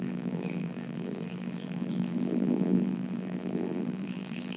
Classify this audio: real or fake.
fake